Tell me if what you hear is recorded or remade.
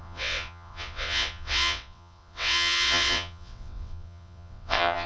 remade